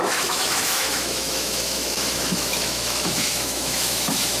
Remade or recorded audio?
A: remade